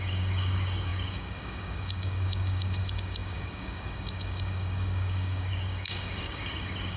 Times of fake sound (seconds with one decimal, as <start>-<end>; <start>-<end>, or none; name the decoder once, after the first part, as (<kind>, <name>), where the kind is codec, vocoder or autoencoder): 0.0-7.0 (codec, DAC)